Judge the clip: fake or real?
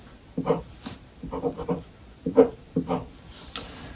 fake